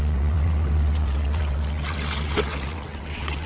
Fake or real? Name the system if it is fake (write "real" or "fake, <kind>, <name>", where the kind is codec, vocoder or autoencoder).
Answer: fake, vocoder, WaveNeXt